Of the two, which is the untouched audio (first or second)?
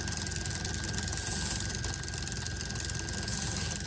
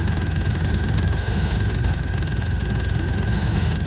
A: first